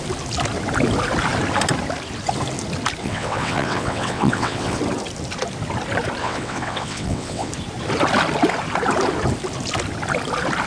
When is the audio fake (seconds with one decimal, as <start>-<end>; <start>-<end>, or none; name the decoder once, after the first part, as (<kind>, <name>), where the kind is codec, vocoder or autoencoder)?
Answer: 3.0-4.8 (vocoder, WaveNeXt); 6.2-7.5